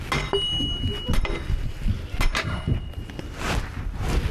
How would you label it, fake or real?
real